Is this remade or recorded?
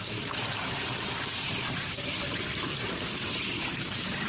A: remade